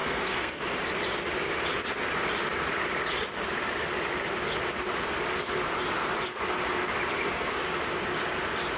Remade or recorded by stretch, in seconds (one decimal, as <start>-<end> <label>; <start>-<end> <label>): 0.0-0.6 remade; 0.6-8.8 recorded